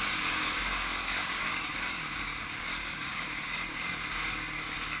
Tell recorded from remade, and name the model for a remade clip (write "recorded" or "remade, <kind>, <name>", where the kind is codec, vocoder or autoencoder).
remade, codec, DAC